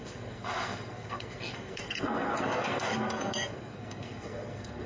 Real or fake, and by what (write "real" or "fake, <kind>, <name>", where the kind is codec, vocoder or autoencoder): fake, codec, SNAC